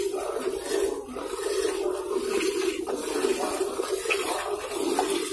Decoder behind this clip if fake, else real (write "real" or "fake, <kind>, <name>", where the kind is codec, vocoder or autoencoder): real